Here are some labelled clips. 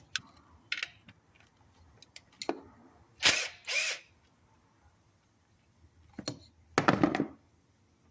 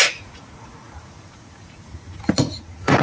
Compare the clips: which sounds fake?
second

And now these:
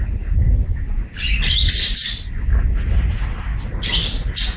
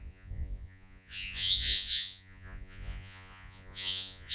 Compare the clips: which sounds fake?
second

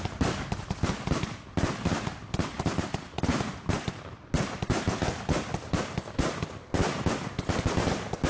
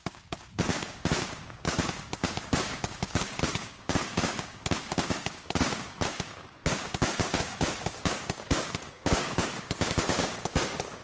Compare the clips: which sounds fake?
second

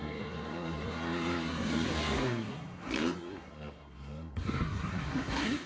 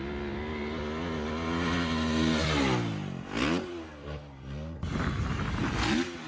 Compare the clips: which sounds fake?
first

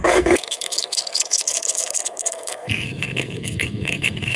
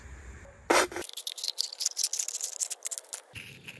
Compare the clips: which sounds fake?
first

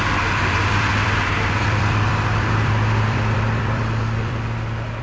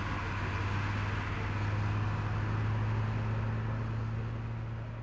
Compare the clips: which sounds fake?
first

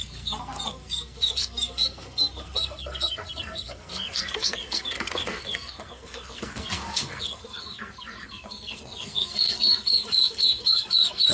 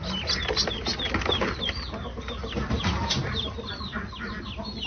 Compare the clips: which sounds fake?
first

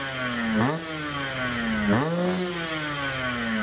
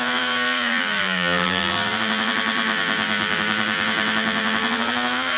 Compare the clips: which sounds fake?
second